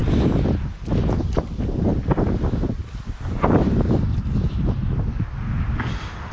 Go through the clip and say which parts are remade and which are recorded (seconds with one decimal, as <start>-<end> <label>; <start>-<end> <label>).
0.0-6.3 recorded